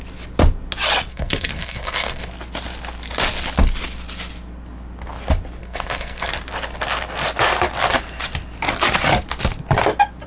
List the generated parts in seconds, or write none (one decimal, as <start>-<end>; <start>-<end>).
1.1-2.3; 5.6-6.3